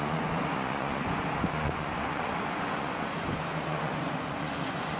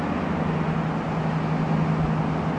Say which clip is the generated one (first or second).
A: first